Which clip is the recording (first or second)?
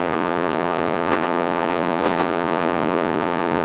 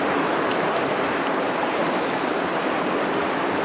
second